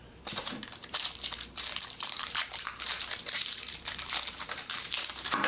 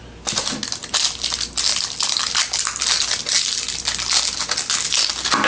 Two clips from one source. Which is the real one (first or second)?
second